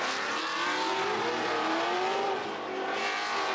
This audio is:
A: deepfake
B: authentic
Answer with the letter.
B